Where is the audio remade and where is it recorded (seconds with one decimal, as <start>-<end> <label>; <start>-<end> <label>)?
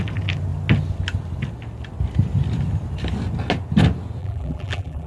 0.0-4.2 recorded; 4.2-5.1 remade